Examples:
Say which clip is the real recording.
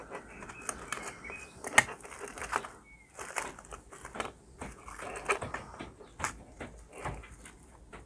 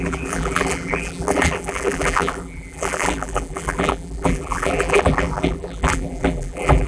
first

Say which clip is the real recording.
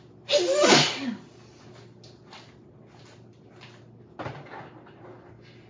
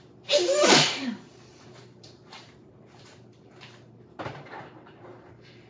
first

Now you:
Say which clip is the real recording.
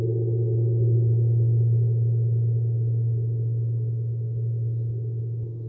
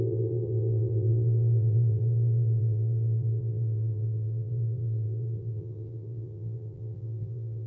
first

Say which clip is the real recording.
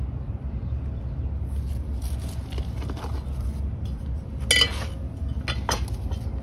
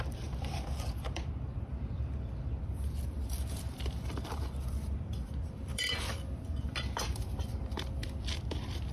first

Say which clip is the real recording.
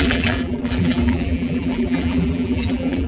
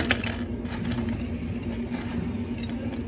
second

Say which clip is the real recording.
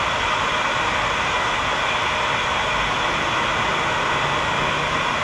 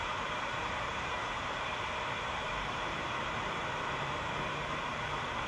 first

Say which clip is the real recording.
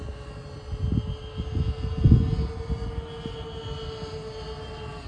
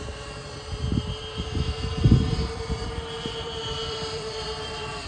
first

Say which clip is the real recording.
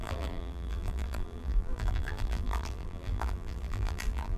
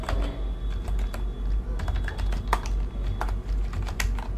second